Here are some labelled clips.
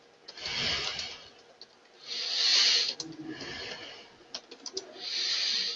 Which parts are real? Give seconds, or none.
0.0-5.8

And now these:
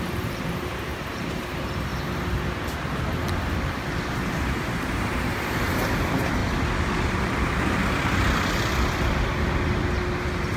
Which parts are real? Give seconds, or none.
1.9-4.1; 6.4-7.1; 7.8-10.6

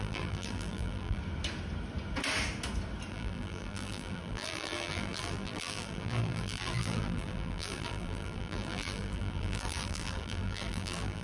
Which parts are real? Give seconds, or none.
1.2-3.1